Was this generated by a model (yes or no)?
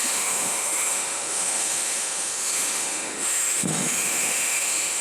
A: yes